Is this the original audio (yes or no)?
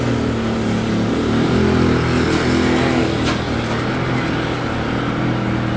yes